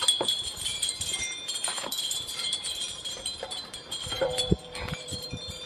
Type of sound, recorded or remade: remade